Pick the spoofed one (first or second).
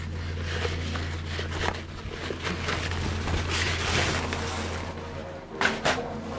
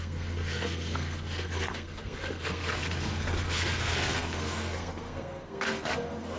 second